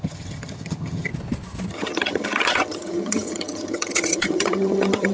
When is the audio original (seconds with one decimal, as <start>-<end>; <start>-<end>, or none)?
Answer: 1.1-1.7